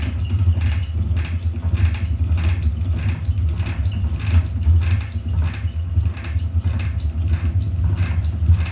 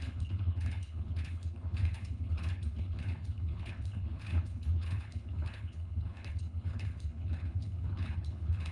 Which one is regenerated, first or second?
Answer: second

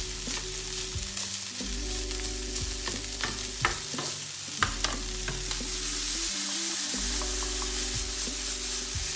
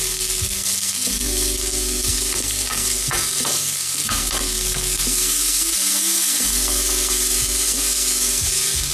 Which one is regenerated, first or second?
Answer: second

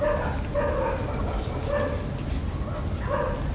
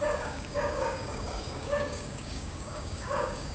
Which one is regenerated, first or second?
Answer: second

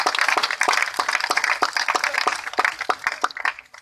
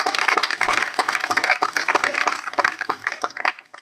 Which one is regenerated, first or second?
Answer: second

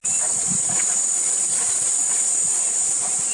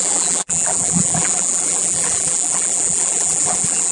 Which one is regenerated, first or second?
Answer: second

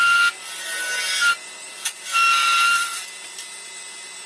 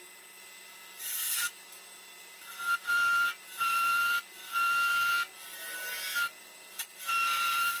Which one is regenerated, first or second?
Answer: second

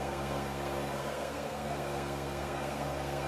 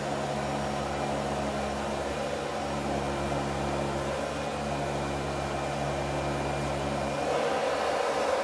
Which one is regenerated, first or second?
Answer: first